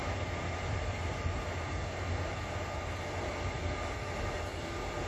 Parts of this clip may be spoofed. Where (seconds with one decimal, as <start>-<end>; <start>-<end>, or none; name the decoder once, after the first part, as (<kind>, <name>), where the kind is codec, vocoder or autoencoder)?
none